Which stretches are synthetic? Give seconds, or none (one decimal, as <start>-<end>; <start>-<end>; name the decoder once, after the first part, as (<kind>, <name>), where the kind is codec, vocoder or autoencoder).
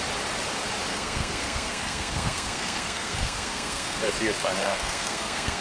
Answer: 0.9-4.1 (codec, SNAC); 4.6-5.6